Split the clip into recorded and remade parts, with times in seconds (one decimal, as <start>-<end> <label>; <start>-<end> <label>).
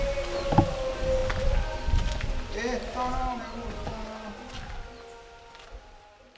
0.0-6.4 recorded